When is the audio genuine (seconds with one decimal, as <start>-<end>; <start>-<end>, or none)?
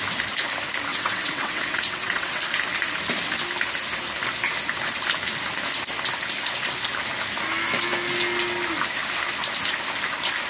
0.0-0.9; 2.4-10.5